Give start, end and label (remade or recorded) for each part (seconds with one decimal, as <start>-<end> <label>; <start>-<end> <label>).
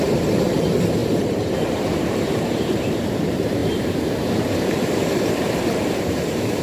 0.0-6.6 remade